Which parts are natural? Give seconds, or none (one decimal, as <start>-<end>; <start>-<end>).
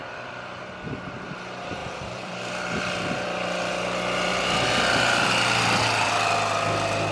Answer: 0.6-1.8; 3.7-4.3; 5.3-7.1